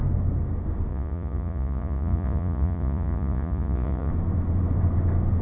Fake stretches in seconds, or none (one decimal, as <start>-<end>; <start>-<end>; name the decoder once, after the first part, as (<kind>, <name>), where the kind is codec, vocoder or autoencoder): 0.9-4.1 (vocoder, Vocos)